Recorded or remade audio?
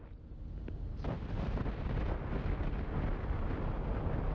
recorded